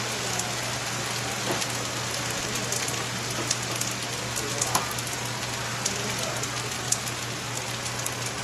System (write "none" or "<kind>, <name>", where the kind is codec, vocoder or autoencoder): none